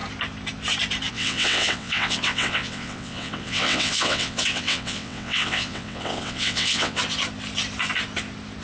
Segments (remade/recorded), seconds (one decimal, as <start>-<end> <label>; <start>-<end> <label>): 0.0-1.1 recorded; 1.1-7.0 remade; 7.0-8.6 recorded